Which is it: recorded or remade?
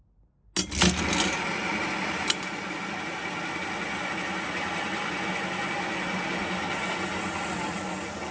recorded